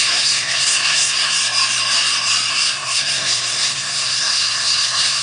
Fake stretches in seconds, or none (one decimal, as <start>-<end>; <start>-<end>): 0.0-1.4; 2.5-5.2